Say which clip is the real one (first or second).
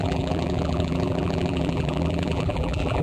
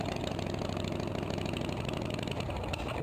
second